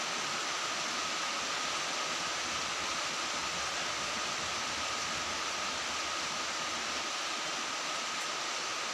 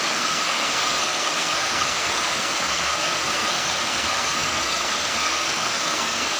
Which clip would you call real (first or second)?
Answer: first